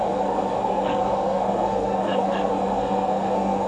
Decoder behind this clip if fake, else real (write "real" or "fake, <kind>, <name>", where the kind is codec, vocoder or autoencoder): fake, codec, SNAC